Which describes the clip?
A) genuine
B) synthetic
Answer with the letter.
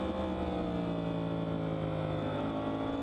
A